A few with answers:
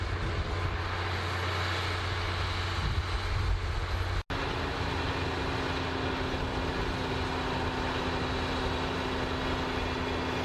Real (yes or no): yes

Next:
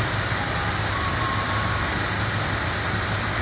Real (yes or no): yes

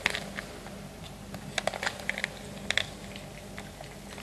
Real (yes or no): yes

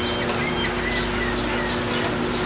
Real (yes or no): yes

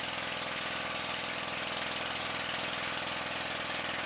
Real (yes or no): yes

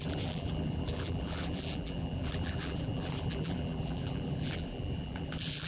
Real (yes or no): no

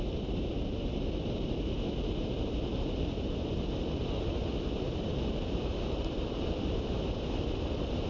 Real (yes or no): yes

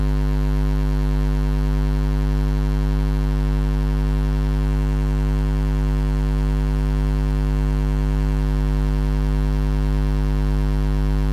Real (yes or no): yes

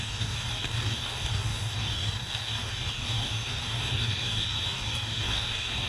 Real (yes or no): no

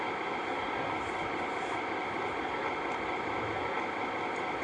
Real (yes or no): yes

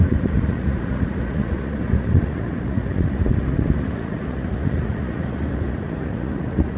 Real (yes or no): no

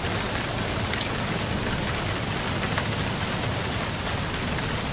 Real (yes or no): yes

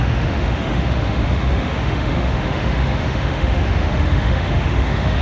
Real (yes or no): no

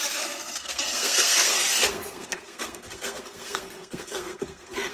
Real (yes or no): no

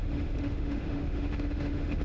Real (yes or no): no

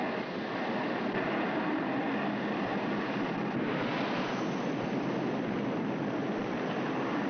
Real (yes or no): no